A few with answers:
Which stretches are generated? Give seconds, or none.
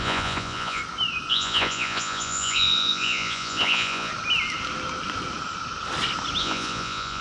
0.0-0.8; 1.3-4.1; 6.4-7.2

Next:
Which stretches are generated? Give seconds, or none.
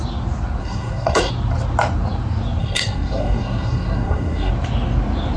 0.6-1.3; 2.6-4.5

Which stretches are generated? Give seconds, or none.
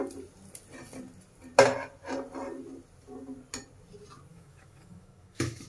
4.3-5.7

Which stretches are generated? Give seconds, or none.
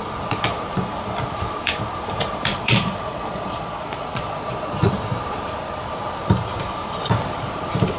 2.5-4.9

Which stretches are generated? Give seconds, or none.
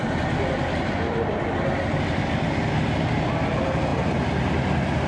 none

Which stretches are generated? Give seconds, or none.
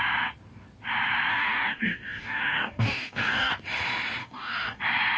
1.3-3.5; 4.2-4.8